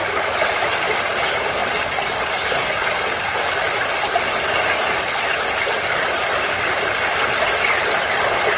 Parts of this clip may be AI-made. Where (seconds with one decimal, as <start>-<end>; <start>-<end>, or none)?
none